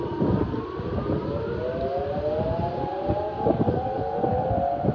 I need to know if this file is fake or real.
real